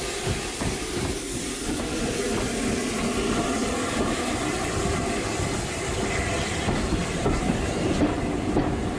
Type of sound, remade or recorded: recorded